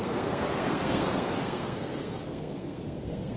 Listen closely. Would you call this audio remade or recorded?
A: remade